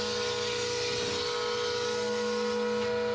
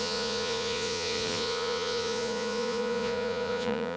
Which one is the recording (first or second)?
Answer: first